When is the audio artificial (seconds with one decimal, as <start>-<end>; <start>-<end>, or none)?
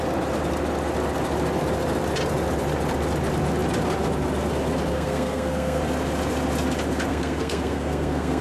4.9-5.8; 7.1-8.4